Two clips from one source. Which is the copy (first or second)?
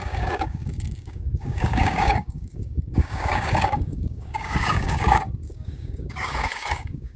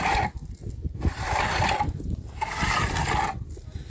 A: first